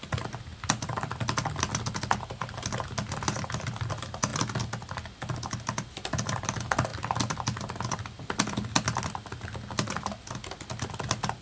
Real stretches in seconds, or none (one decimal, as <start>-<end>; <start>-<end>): 0.0-11.4